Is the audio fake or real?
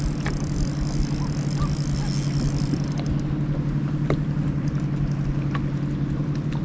real